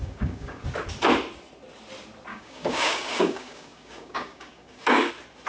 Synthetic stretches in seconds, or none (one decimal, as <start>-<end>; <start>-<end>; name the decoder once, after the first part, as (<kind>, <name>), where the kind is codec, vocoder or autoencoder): 0.0-0.6 (codec, DAC); 2.3-5.1